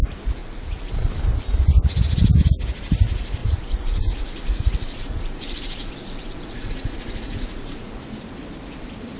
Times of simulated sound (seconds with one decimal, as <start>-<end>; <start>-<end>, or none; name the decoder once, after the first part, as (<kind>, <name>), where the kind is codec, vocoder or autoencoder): 0.4-1.1 (vocoder, Vocos); 3.4-8.0